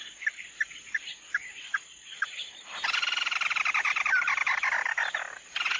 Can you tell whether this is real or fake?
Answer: real